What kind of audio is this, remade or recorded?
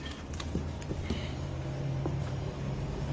remade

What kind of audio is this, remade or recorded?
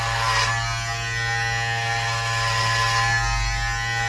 recorded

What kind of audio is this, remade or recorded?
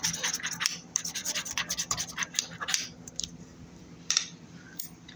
remade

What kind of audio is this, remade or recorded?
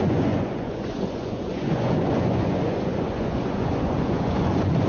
remade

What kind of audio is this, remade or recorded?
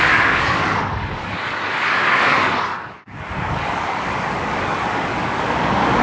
remade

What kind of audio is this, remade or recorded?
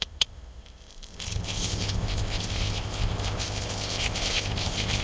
remade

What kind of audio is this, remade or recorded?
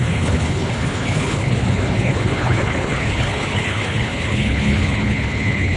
remade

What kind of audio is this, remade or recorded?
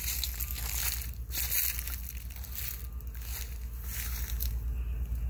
recorded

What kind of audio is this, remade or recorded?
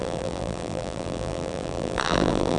remade